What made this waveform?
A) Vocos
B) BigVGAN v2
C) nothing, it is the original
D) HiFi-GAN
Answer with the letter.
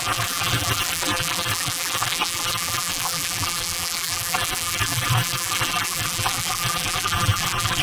B